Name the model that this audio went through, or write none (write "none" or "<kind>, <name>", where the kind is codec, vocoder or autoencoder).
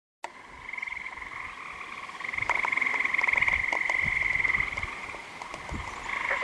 none